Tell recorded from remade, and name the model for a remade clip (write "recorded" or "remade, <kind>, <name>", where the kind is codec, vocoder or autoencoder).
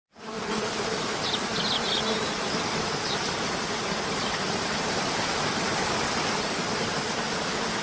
remade, vocoder, BigVGAN v2